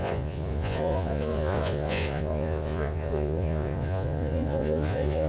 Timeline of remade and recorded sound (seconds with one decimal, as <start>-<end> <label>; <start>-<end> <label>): 0.0-5.3 remade